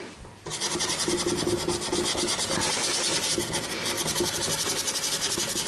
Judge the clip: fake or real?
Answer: real